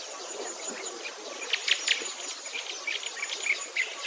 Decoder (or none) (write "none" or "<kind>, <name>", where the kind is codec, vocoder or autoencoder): none